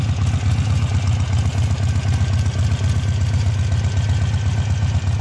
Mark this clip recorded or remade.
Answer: recorded